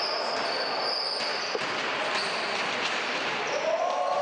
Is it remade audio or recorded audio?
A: recorded